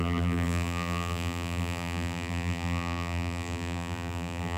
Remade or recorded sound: remade